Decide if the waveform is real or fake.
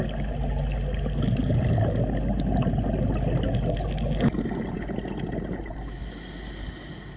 real